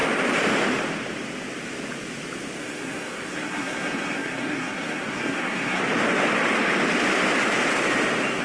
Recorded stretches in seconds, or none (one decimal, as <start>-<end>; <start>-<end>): 0.0-2.6; 5.8-8.4